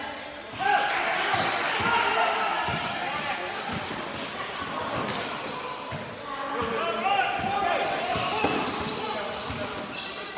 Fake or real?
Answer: real